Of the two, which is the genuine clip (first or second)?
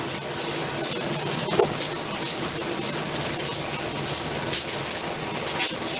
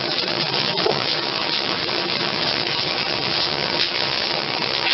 first